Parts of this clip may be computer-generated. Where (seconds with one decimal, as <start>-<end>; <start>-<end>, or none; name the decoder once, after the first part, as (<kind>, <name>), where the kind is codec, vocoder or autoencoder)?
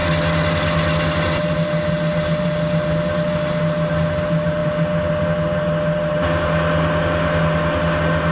none